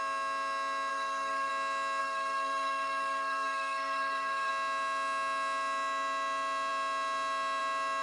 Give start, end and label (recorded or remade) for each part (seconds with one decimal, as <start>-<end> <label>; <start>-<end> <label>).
0.0-0.9 recorded; 0.9-1.5 remade; 1.5-2.0 recorded; 2.0-4.5 remade; 4.5-8.0 recorded